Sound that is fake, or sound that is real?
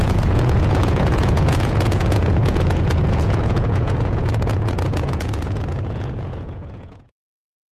fake